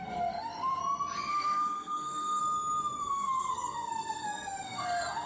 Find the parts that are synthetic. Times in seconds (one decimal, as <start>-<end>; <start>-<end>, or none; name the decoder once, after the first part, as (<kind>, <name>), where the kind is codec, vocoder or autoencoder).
0.0-0.8 (codec, SNAC); 1.3-2.4; 3.0-5.3